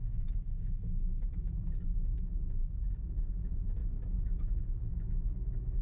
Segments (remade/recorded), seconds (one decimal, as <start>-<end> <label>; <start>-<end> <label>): 0.0-5.8 remade